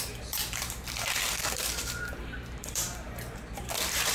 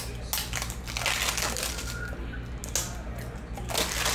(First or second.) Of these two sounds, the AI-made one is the first